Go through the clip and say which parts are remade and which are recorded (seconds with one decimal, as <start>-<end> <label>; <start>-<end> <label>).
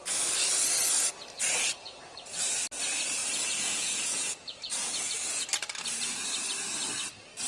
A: 0.0-3.2 recorded; 3.2-5.5 remade; 5.5-7.5 recorded